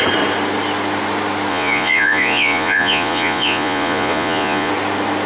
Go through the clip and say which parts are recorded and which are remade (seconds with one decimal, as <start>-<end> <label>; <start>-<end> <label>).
0.0-1.5 recorded; 1.5-4.7 remade; 4.7-5.3 recorded

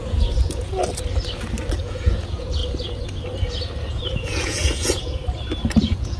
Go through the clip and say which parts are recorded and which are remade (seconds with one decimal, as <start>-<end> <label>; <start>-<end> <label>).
0.0-0.8 remade; 0.8-1.8 recorded; 1.8-2.6 remade; 2.6-3.9 recorded; 3.9-5.2 remade; 5.2-5.8 recorded; 5.8-6.2 remade